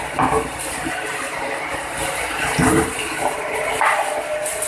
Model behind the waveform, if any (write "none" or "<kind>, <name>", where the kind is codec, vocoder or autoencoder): vocoder, BigVGAN v2